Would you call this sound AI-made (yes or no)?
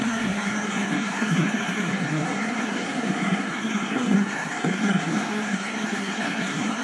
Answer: yes